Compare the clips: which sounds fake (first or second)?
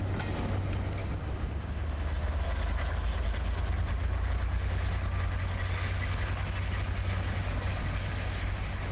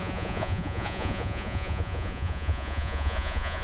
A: second